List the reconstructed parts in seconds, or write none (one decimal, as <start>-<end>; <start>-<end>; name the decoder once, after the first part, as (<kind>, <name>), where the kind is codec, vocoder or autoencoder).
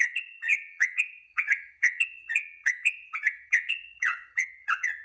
0.0-5.0 (vocoder, WaveNeXt)